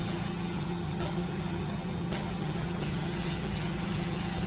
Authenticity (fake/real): fake